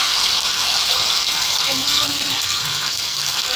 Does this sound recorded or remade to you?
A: remade